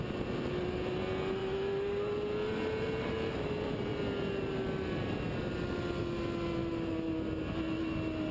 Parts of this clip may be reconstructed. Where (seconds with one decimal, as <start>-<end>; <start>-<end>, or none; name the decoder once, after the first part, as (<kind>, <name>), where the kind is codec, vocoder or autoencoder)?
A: 1.4-2.0 (autoencoder, DAC-VAE)